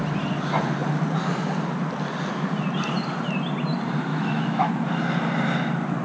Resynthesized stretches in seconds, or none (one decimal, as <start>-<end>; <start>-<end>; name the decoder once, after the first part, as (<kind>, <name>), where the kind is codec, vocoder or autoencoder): 4.1-4.7 (autoencoder, DAC-VAE)